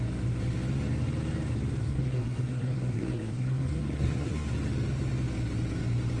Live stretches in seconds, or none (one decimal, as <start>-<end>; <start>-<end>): 0.0-1.8; 4.5-6.2